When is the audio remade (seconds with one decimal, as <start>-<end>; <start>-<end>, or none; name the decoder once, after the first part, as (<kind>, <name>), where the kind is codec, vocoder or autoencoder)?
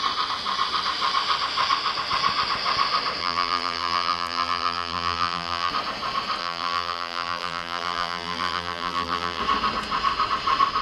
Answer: 3.2-5.7 (vocoder, BigVGAN v2); 6.4-9.4